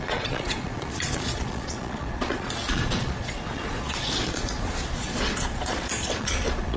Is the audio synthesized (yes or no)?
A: yes